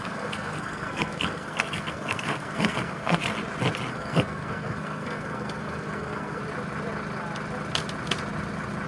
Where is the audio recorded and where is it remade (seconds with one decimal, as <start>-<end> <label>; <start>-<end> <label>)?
0.0-3.2 remade; 3.2-3.9 recorded; 3.9-6.4 remade; 6.4-8.9 recorded

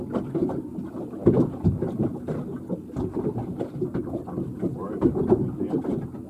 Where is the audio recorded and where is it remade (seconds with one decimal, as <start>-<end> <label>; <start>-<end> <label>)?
0.0-4.5 recorded; 4.5-5.4 remade; 5.4-6.3 recorded